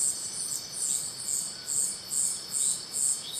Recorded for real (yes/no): yes